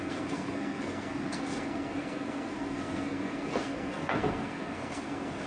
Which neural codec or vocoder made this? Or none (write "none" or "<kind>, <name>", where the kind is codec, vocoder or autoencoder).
codec, SNAC